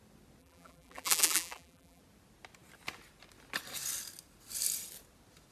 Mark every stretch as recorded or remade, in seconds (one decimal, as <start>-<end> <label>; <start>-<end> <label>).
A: 0.0-0.4 recorded; 0.4-2.0 remade; 2.0-5.5 recorded